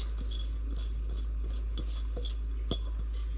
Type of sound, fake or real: real